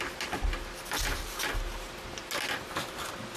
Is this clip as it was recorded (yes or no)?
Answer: yes